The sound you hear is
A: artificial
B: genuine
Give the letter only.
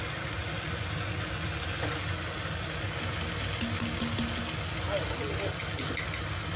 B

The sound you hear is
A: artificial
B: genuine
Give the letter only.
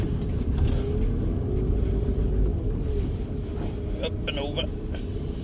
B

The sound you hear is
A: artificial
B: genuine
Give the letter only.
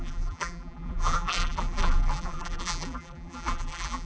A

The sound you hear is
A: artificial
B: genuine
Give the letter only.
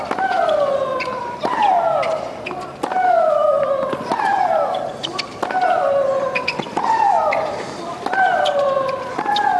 B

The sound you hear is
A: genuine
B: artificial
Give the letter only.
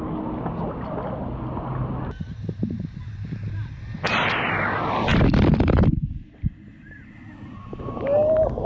A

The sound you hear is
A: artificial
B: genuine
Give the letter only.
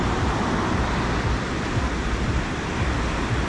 B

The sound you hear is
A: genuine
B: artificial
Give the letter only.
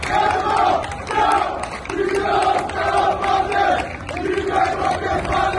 A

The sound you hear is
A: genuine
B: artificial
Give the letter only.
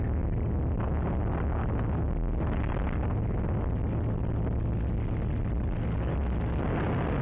A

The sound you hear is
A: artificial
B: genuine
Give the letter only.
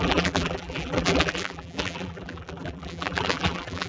A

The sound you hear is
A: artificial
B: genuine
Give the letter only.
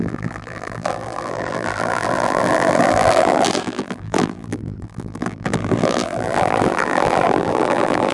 A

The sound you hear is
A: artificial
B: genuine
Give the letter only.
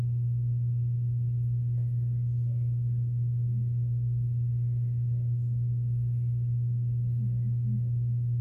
B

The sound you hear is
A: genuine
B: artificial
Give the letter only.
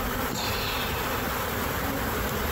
B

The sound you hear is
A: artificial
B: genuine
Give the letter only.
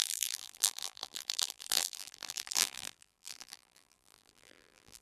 A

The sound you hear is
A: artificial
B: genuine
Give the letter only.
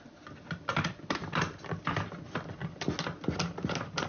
B